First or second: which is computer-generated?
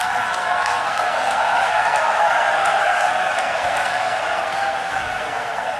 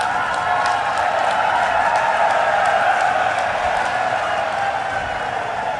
first